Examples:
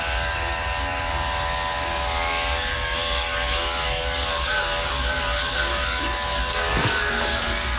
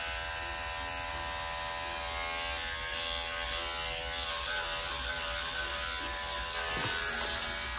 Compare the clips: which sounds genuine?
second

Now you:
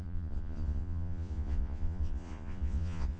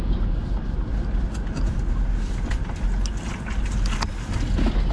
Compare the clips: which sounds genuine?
second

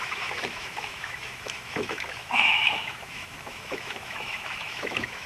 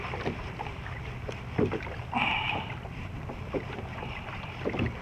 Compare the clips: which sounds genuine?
second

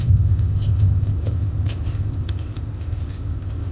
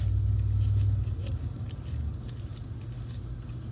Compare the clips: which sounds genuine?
second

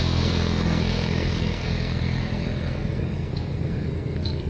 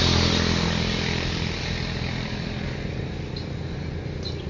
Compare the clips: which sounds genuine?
second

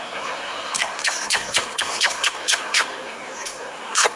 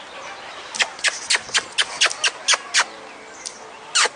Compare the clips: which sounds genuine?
second